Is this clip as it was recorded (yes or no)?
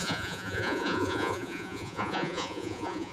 no